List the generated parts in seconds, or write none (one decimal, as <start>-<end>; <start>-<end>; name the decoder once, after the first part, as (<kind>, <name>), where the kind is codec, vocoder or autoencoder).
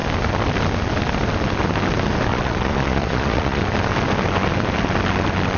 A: 2.3-3.6 (vocoder, Vocos)